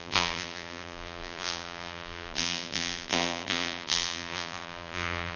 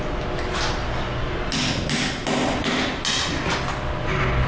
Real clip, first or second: second